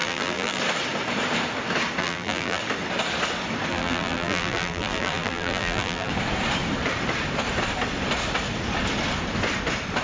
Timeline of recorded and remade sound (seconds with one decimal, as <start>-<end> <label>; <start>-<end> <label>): 0.0-0.6 remade; 0.6-2.0 recorded; 2.0-2.6 remade; 2.6-3.7 recorded; 3.7-6.1 remade; 6.1-10.0 recorded